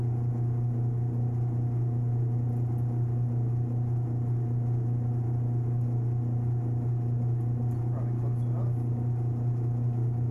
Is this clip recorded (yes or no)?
yes